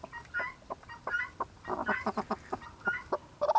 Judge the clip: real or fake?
real